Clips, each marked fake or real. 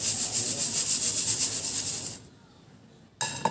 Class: real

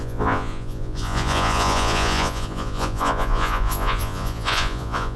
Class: fake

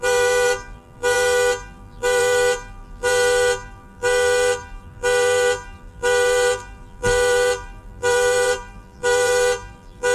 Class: fake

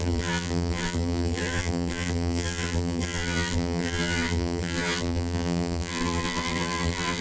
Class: fake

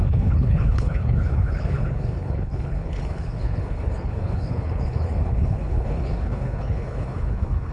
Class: fake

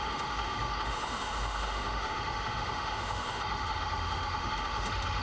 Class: fake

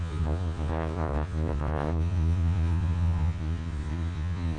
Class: fake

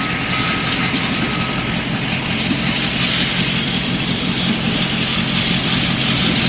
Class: real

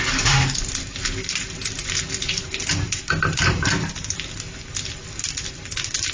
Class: real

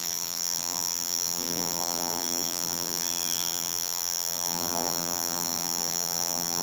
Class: fake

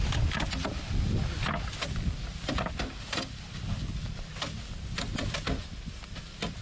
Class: real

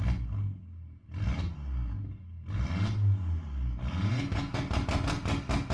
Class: real